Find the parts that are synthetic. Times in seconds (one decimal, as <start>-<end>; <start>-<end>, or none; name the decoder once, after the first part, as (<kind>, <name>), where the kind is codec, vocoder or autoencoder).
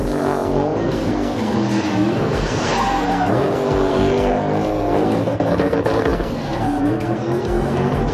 0.0-8.1 (codec, SNAC)